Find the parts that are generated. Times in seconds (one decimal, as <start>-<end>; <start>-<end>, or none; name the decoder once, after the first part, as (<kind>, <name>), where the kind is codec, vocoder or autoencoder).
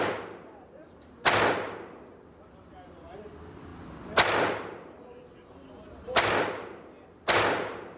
none